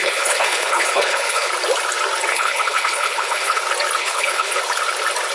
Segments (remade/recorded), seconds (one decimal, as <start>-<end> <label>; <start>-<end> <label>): 0.0-1.5 remade; 1.5-2.3 recorded; 2.3-3.6 remade; 3.6-4.0 recorded; 4.0-4.6 remade; 4.6-5.3 recorded